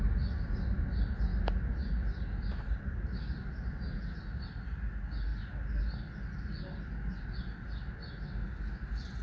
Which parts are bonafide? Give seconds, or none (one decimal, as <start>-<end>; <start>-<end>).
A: 0.0-9.2